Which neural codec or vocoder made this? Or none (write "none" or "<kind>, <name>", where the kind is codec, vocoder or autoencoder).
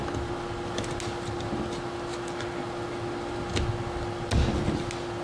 none